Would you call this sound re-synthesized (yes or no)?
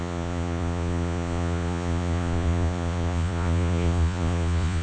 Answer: yes